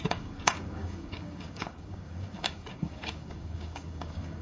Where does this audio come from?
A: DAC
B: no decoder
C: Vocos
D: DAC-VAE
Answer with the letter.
A